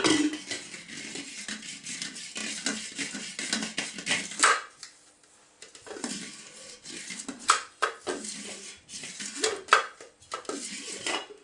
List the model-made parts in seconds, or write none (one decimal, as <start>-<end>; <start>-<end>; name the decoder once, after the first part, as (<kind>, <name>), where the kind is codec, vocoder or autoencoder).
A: none

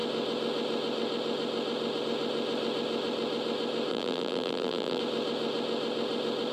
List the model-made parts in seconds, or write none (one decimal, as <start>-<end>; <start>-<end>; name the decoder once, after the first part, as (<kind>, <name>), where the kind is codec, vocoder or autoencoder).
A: 3.9-5.0 (vocoder, BigVGAN v2)

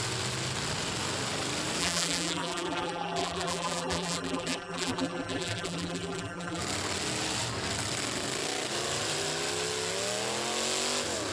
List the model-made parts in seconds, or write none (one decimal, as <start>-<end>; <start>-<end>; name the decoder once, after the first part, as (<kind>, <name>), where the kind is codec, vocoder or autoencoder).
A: 1.8-6.6 (vocoder, BigVGAN v2)

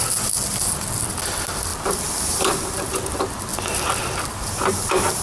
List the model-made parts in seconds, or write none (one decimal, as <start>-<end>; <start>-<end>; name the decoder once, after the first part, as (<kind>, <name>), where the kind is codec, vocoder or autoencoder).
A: 1.7-2.9 (vocoder, BigVGAN v2); 3.5-4.7

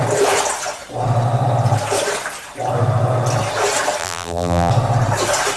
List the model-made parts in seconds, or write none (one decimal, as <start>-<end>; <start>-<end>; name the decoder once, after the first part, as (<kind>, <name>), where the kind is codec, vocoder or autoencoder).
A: 4.0-4.7 (vocoder, BigVGAN v2)

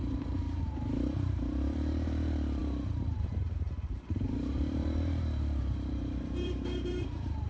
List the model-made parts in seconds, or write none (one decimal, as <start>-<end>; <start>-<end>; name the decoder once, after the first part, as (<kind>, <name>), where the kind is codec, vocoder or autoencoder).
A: 0.0-7.5 (vocoder, BigVGAN v2)